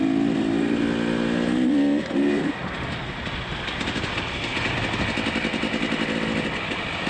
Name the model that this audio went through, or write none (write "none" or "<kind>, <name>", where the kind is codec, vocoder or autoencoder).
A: none